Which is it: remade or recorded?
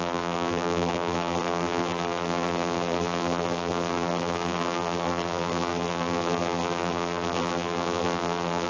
remade